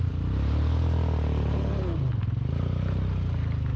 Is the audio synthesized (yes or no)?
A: no